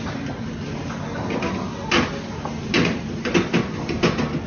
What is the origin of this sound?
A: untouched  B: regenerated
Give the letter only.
A